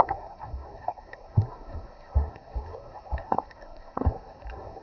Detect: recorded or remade remade